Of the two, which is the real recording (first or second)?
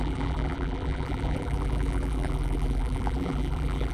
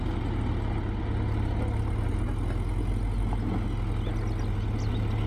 second